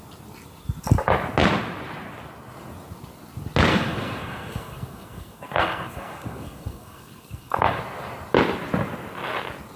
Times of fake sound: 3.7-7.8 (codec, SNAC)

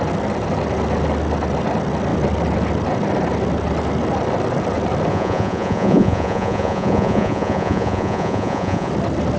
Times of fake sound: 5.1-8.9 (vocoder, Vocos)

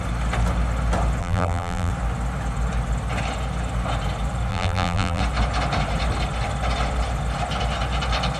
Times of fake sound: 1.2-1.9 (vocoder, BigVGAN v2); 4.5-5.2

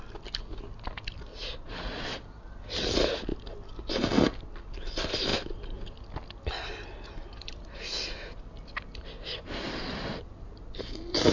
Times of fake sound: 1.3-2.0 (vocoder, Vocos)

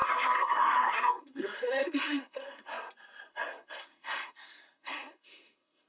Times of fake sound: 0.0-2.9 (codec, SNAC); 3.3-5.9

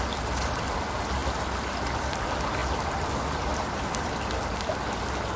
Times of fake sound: 3.5-4.3 (vocoder, BigVGAN v2)

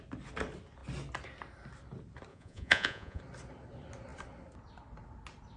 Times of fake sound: 2.3-3.2 (vocoder, Vocos)